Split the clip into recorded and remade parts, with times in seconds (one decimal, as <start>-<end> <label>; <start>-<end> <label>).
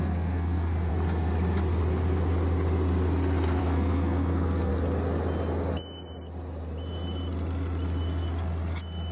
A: 0.0-0.9 remade; 0.9-3.6 recorded; 3.6-4.7 remade; 4.7-9.1 recorded